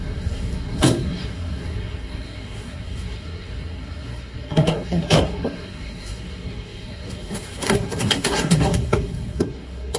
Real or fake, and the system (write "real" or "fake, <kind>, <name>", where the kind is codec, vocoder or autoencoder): fake, codec, SNAC